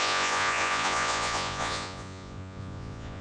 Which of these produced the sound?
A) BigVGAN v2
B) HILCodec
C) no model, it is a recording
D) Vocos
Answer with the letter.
D